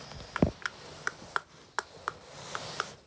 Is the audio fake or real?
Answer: real